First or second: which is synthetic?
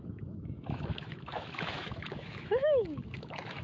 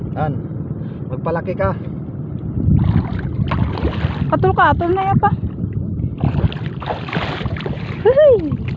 first